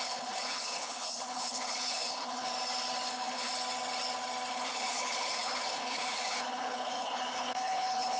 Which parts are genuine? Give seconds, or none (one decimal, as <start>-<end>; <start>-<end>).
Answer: 2.5-3.1; 3.5-4.5